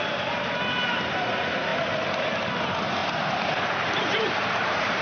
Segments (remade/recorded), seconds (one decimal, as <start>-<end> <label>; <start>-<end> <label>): 0.0-3.0 recorded; 3.0-5.0 remade